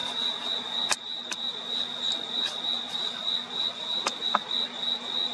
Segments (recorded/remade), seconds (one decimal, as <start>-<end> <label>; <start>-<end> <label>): 0.0-5.3 recorded

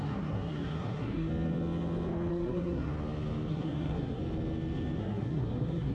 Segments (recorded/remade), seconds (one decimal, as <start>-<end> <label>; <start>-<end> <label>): 0.0-1.3 remade; 1.3-2.3 recorded; 2.3-2.9 remade; 2.9-3.5 recorded; 3.5-4.2 remade; 4.2-5.0 recorded; 5.0-5.9 remade

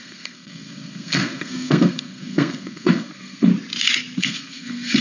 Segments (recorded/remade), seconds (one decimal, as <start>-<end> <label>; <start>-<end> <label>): 0.0-3.5 remade; 3.5-4.2 recorded; 4.2-5.0 remade

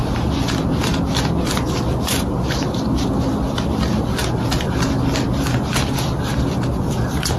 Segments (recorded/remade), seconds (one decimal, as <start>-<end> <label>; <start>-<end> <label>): 0.0-7.4 recorded

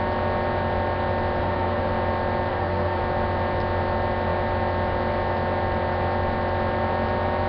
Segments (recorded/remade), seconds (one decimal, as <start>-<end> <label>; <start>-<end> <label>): 0.0-1.4 recorded; 1.4-1.9 remade; 1.9-2.5 recorded; 2.5-3.0 remade; 3.0-7.5 recorded

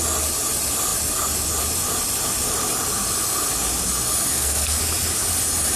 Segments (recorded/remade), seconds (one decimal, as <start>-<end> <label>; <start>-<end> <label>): 0.0-4.3 recorded; 4.3-4.8 remade; 4.8-5.8 recorded

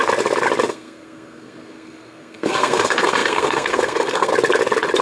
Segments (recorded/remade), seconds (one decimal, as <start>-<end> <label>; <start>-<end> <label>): 0.0-0.7 recorded; 0.7-4.3 remade; 4.3-5.0 recorded

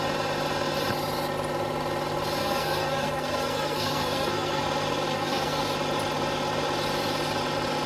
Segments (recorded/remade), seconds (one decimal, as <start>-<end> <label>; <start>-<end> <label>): 0.0-2.4 recorded; 2.4-4.6 remade; 4.6-5.1 recorded; 5.1-5.6 remade; 5.6-7.9 recorded